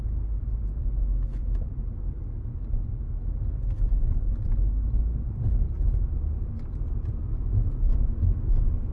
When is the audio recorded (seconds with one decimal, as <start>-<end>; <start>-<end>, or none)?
0.0-1.4; 2.0-8.9